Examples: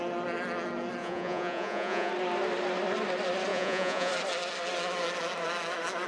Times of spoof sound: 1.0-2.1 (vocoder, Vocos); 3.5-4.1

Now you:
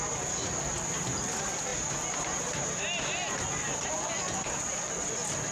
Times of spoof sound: none

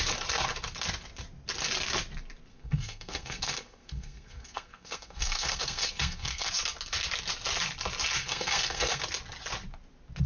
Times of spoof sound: 2.5-6.5 (codec, SNAC); 8.2-9.0

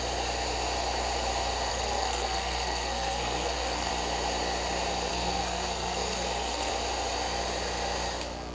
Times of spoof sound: 1.7-3.9 (codec, SNAC); 5.1-6.7

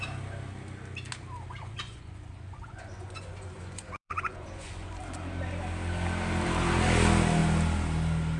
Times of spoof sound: 1.6-5.0 (vocoder, Vocos)

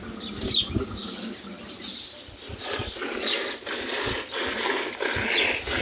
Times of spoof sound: none

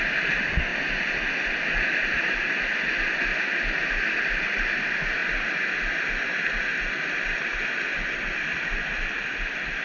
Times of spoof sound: none